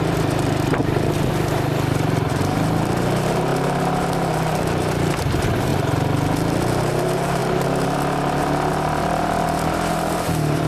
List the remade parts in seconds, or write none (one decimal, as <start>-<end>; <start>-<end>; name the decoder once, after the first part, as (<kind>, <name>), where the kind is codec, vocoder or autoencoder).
0.0-0.8 (vocoder, BigVGAN v2); 1.9-5.7; 6.9-7.4; 8.7-10.7